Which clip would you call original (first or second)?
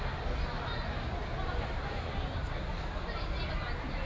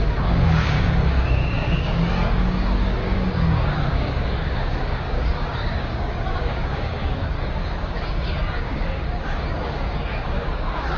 first